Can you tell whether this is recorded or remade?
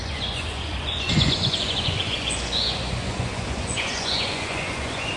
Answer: remade